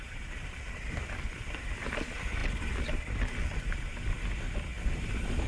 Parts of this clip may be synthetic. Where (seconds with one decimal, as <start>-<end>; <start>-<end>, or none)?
none